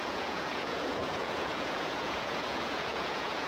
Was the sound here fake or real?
fake